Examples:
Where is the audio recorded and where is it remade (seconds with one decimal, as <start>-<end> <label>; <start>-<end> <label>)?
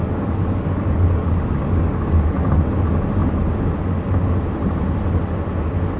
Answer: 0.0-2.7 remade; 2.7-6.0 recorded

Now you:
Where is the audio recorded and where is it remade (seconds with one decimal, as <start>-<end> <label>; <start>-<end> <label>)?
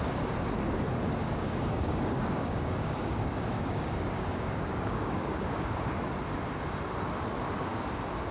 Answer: 0.0-1.2 recorded; 1.2-5.9 remade; 5.9-8.3 recorded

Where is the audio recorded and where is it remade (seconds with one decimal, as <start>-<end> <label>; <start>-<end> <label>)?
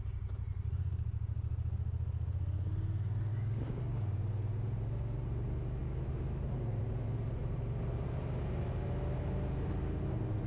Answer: 0.0-3.3 recorded; 3.3-3.8 remade; 3.8-10.5 recorded